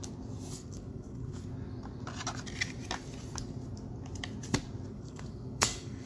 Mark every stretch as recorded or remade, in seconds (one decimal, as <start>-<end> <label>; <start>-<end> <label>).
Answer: 0.0-0.5 recorded; 0.5-1.5 remade; 1.5-4.9 recorded; 4.9-6.1 remade